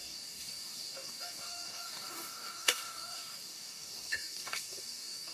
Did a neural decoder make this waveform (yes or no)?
yes